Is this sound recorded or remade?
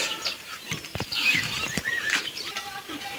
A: remade